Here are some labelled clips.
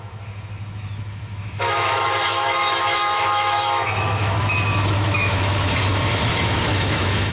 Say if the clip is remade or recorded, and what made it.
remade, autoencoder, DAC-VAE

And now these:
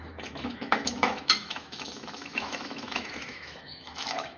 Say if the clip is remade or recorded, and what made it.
remade, autoencoder, DAC-VAE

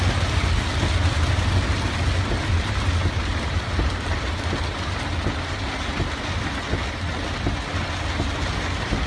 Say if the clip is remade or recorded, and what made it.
recorded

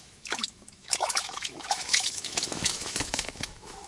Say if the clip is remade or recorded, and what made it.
remade, autoencoder, DAC-VAE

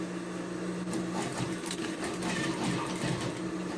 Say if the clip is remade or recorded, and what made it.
recorded